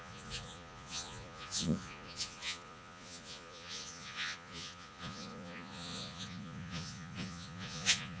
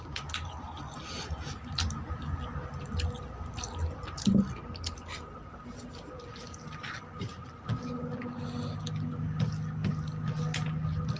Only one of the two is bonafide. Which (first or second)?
second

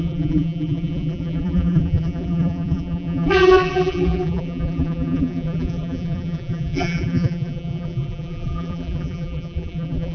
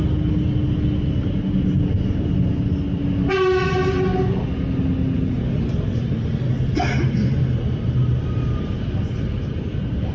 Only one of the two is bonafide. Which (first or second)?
second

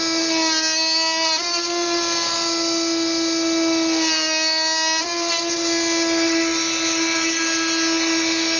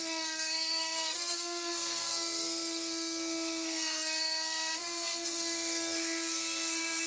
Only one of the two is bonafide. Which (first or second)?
first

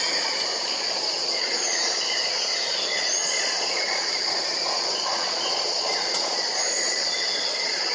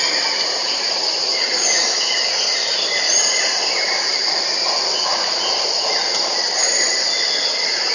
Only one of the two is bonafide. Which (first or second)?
second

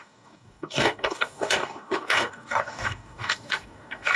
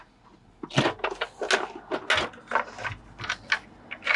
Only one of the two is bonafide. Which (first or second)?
second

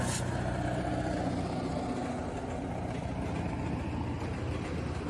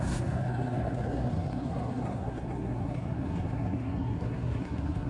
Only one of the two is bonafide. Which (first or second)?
first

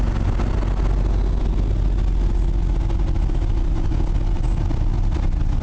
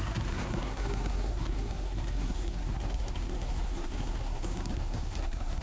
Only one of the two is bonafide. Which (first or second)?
first